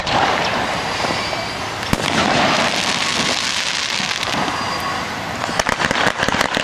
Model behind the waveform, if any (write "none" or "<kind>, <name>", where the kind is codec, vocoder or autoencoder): none